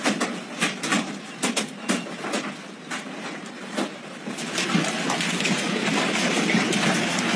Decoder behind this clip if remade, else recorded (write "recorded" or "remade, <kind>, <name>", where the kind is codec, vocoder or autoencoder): recorded